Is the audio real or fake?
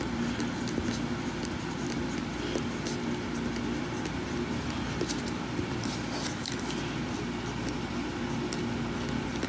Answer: real